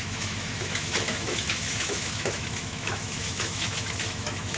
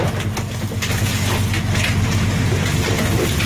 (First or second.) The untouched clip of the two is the second